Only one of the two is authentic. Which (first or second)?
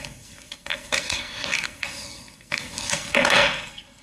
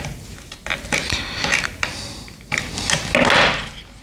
second